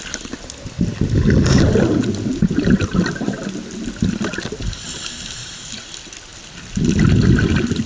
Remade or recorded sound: recorded